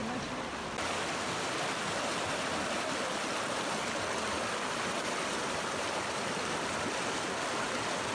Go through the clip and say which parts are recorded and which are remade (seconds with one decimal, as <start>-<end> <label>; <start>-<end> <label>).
0.0-8.1 recorded